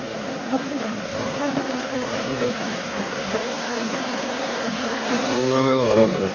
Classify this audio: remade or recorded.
remade